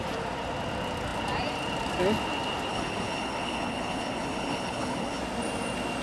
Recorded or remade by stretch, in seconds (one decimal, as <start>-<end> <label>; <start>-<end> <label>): 0.0-2.7 recorded; 2.7-5.2 remade; 5.2-6.0 recorded